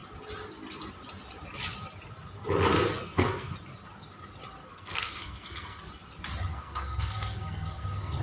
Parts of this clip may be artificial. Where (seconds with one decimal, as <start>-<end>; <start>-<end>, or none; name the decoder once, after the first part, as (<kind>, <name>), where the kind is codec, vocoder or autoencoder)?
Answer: 2.9-3.5 (codec, SNAC); 4.6-5.9; 6.5-8.2

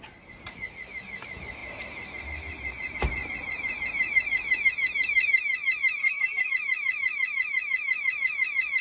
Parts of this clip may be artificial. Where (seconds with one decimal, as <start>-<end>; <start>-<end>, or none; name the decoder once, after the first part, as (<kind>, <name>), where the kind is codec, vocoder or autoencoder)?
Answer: 6.0-6.5 (codec, SNAC)

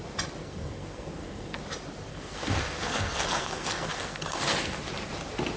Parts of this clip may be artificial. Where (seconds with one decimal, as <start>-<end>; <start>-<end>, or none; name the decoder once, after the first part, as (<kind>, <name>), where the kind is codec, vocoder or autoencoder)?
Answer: 0.4-1.6 (codec, SNAC); 2.1-4.8

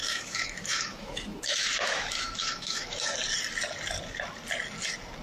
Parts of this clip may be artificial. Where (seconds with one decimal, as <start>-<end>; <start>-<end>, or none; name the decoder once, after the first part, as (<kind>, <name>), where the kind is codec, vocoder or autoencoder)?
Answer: 0.0-3.1 (autoencoder, DAC-VAE)